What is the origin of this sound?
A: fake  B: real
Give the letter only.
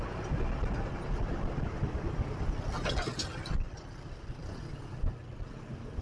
B